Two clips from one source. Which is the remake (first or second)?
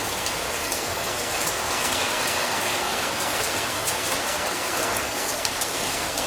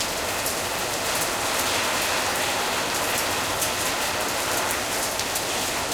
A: first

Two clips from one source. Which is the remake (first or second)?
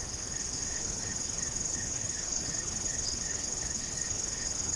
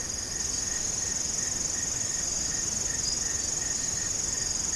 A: first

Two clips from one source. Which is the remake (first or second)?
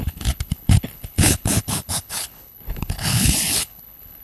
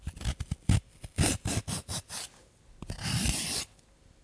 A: first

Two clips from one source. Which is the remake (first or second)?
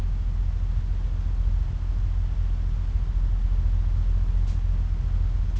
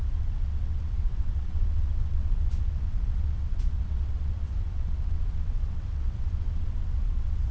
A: second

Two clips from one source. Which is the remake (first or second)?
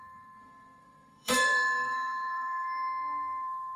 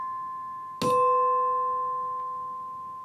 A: first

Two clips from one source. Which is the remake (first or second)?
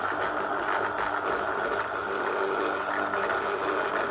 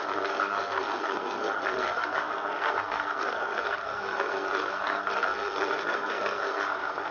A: second